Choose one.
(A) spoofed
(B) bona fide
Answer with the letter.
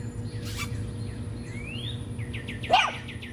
B